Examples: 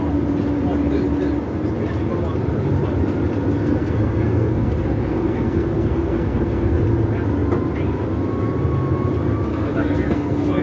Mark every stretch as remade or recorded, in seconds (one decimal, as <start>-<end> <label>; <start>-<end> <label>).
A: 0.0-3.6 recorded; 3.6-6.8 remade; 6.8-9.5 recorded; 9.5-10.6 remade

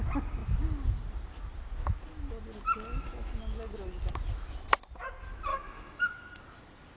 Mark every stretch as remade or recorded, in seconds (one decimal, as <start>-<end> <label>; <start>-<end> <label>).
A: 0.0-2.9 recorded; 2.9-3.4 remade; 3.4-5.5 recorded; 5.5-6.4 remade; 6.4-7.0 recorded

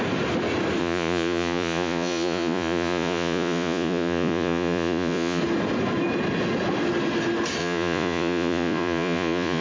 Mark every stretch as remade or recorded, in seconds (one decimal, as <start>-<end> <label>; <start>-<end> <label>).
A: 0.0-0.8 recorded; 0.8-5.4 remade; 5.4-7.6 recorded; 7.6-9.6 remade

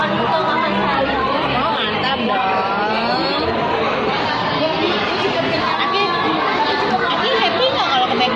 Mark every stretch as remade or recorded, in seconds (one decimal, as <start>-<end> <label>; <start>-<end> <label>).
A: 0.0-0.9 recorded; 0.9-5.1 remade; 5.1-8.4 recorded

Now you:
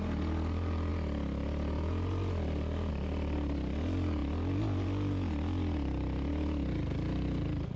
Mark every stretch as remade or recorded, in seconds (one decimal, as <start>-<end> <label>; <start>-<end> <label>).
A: 0.0-7.8 recorded